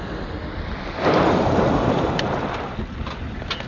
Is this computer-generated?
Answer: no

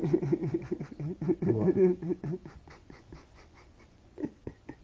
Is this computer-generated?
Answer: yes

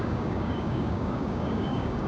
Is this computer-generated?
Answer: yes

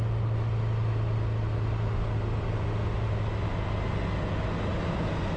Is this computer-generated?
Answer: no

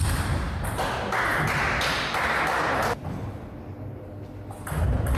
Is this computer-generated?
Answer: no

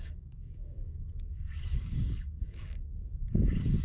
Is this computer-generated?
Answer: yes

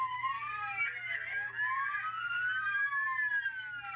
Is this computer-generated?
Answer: no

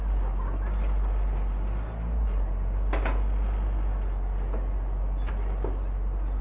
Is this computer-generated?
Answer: no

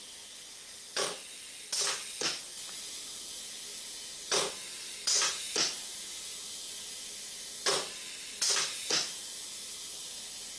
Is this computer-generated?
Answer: no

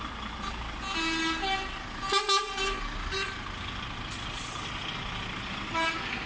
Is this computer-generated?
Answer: no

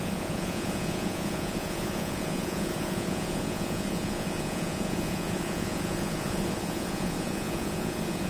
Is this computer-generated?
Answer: yes